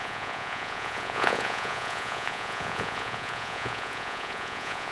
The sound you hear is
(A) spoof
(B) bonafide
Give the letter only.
A